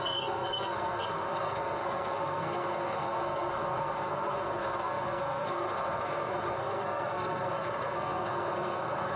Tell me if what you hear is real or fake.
fake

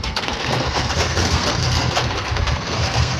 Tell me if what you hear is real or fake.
fake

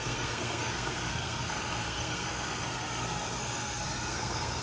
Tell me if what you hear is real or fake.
fake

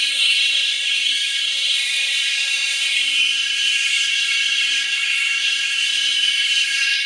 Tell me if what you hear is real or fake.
fake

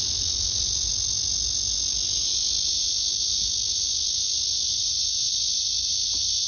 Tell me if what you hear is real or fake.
real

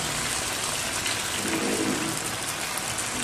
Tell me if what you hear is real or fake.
real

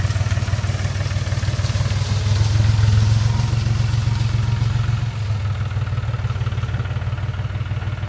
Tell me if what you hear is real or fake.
real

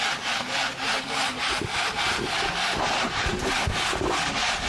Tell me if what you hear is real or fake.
real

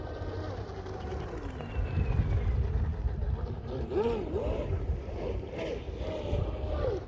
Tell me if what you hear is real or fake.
real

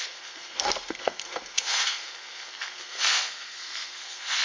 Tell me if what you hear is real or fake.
fake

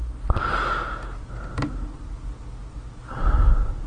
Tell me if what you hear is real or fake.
real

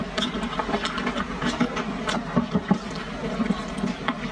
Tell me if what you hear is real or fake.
real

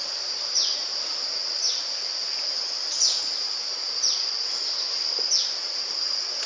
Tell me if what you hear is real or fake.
real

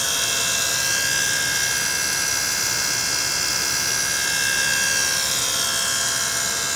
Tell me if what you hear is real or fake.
real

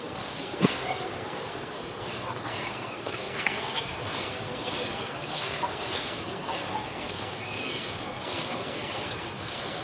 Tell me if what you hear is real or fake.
fake